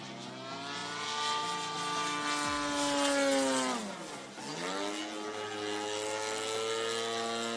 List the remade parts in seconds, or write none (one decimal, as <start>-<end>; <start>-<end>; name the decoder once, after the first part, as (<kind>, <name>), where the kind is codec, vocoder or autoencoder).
none